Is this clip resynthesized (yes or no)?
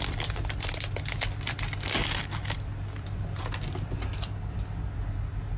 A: no